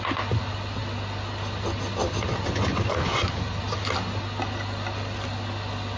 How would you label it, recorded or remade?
recorded